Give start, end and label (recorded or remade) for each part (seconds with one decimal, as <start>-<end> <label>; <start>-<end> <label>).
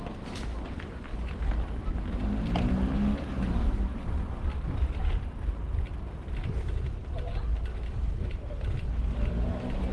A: 0.0-9.9 recorded